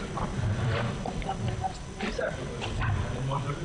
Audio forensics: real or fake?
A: fake